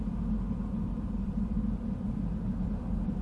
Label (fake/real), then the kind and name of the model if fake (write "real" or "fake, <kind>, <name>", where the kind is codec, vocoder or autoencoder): fake, vocoder, BigVGAN v2